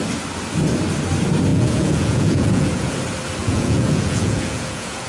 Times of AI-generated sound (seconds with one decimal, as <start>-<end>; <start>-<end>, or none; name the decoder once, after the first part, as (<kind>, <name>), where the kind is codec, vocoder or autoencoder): 1.5-3.0 (vocoder, Vocos); 3.4-5.1